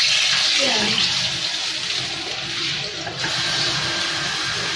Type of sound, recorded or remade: recorded